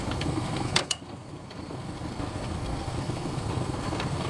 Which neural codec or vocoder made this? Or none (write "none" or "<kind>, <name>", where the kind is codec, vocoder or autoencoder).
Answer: codec, SNAC